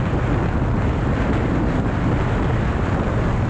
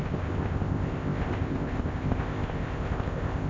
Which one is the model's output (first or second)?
second